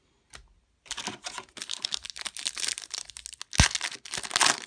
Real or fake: real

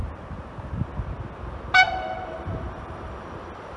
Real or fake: real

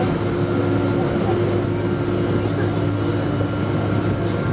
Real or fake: real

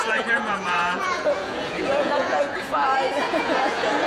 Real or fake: fake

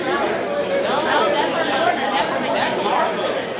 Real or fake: real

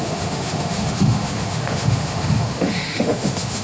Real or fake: fake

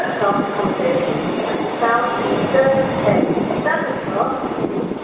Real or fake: real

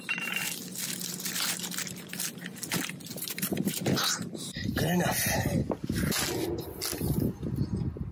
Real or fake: real